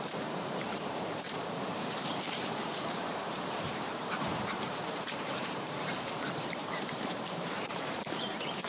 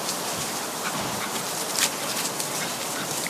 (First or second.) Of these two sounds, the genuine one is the second